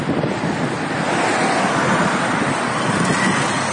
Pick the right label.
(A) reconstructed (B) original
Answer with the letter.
B